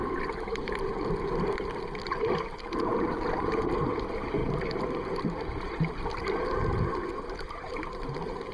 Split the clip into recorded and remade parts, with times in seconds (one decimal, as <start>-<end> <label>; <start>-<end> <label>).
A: 0.0-4.4 recorded; 4.4-5.9 remade; 5.9-7.1 recorded; 7.1-7.7 remade; 7.7-8.5 recorded